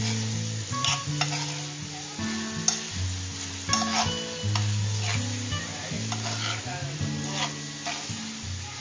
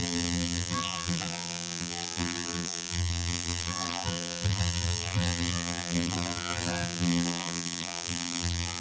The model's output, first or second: second